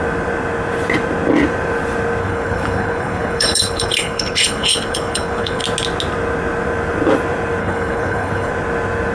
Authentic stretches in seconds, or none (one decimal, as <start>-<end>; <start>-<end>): 0.0-2.2; 5.6-7.6; 8.5-9.1